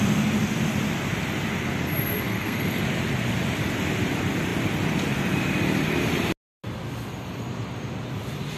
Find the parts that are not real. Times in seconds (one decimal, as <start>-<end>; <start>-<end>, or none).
2.3-2.8

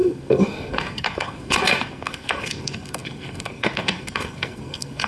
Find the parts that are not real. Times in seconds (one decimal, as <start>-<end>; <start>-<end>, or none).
0.0-5.1

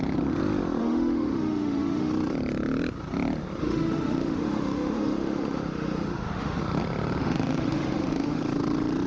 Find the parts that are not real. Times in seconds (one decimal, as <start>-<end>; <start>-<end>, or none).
0.8-2.1; 3.6-6.6; 7.2-8.4

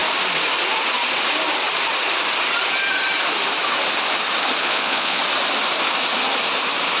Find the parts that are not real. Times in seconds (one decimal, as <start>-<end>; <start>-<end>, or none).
4.6-5.2

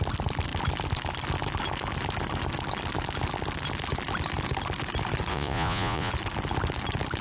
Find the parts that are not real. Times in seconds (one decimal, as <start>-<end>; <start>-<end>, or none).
5.3-6.1

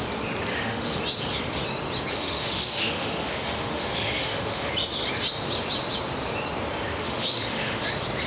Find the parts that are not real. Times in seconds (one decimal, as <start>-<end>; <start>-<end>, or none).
0.5-1.0; 2.1-4.7; 6.9-7.8